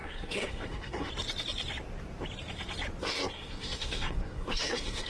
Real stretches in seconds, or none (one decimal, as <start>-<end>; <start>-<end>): 1.1-3.0